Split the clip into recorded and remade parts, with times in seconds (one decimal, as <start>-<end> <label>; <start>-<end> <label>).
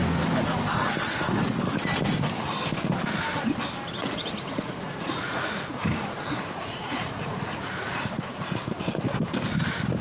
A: 0.0-4.0 recorded; 4.0-8.7 remade; 8.7-10.0 recorded